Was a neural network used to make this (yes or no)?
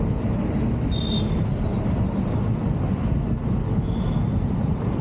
no